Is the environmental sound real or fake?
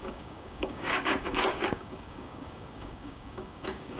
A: fake